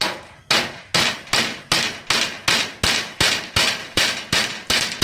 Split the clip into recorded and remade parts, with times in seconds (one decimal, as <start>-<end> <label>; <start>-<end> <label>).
0.0-3.8 recorded; 3.8-5.0 remade